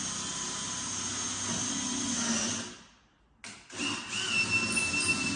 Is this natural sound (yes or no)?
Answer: yes